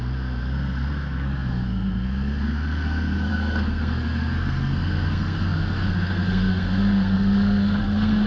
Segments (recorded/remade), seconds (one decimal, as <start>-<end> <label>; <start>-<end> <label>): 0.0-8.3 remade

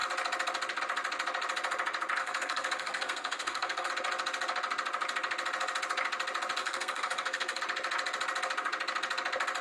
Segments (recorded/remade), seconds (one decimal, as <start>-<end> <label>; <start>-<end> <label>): 0.0-2.2 recorded; 2.2-3.9 remade; 3.9-6.6 recorded; 6.6-7.6 remade; 7.6-9.6 recorded

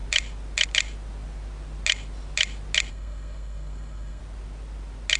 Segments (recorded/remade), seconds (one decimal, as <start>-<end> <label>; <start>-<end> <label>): 0.0-2.9 recorded; 2.9-4.2 remade; 4.2-5.2 recorded